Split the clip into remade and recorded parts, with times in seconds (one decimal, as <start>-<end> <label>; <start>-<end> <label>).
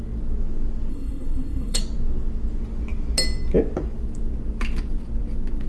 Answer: 0.0-0.9 recorded; 0.9-1.8 remade; 1.8-5.7 recorded